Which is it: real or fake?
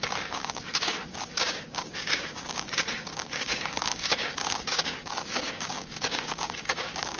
fake